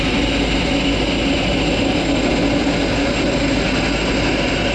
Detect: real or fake real